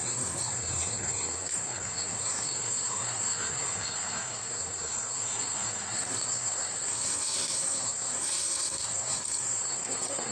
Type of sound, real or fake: fake